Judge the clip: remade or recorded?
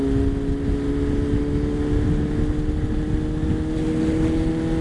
recorded